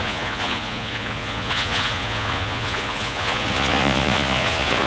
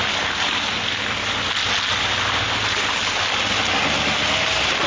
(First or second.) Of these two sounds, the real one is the second